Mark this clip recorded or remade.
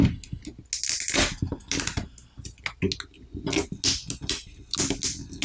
recorded